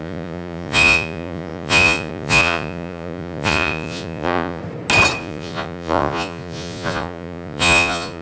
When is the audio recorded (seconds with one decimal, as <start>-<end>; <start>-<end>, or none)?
4.6-5.2